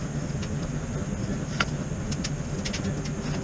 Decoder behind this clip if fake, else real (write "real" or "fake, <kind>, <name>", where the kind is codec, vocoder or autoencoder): real